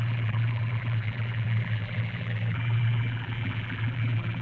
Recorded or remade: remade